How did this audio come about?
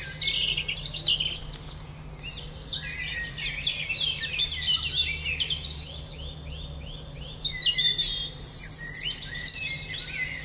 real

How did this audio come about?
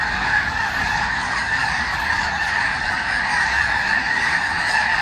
fake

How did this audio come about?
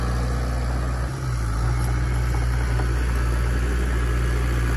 real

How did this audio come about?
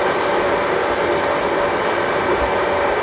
real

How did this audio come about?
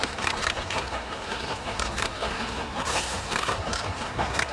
fake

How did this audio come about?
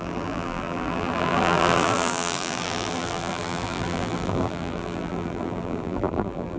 fake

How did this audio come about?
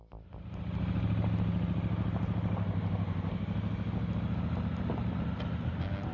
real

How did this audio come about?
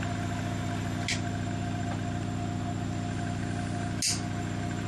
real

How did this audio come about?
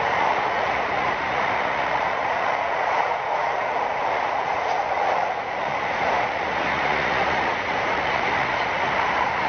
fake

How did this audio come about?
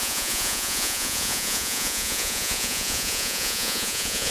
fake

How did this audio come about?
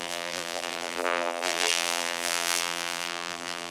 fake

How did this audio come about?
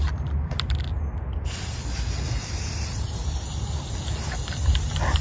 real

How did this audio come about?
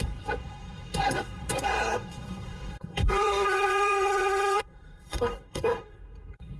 fake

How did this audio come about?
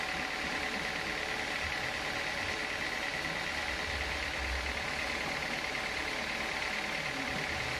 real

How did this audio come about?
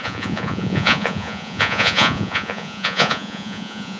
fake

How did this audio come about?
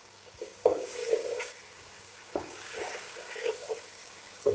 fake